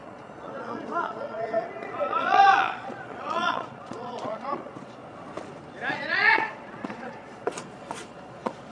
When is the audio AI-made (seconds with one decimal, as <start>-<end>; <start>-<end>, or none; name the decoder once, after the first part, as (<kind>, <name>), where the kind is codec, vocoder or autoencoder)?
0.0-5.0 (vocoder, Vocos); 5.9-8.7